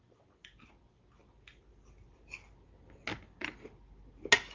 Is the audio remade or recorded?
recorded